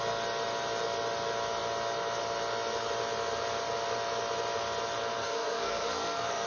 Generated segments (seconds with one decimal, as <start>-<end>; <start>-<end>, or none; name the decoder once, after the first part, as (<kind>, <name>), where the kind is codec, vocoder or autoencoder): 5.2-6.5 (codec, SNAC)